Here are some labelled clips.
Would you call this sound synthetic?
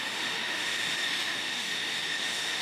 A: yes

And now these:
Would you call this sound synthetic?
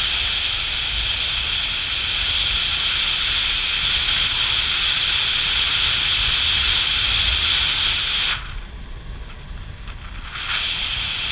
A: no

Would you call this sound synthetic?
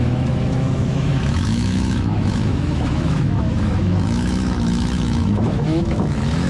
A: yes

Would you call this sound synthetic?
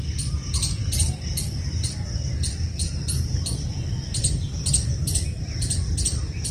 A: no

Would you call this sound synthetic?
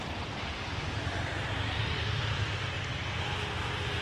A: no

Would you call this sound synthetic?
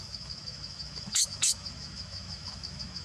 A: yes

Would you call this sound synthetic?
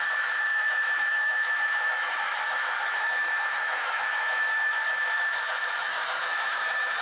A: yes